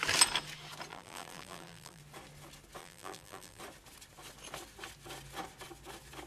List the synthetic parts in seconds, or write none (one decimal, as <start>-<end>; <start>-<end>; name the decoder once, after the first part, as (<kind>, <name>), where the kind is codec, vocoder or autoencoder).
0.9-2.0 (vocoder, BigVGAN v2); 2.8-3.6